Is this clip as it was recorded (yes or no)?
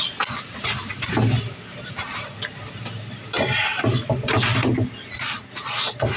yes